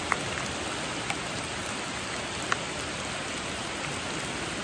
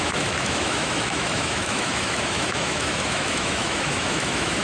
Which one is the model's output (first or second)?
second